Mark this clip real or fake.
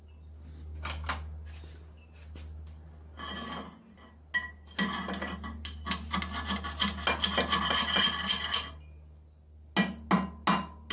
real